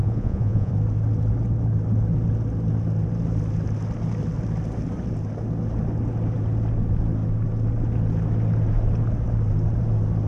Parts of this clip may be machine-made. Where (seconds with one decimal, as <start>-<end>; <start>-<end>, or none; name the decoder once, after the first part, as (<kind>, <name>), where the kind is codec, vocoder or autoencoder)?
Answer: 0.0-0.7 (vocoder, Vocos)